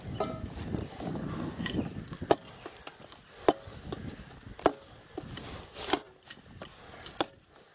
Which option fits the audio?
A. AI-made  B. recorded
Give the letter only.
B